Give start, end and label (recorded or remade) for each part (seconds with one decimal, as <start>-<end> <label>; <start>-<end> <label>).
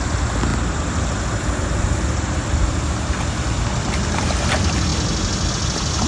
0.0-6.1 recorded